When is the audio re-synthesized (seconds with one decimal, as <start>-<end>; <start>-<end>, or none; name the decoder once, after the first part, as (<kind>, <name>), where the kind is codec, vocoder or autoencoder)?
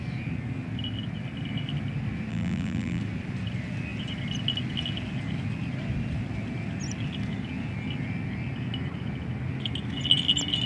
2.3-3.0 (vocoder, BigVGAN v2)